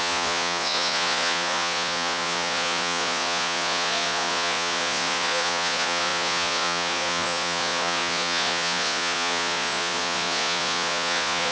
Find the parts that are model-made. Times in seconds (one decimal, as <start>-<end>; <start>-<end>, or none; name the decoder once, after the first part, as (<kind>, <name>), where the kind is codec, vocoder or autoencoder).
0.0-11.5 (vocoder, Vocos)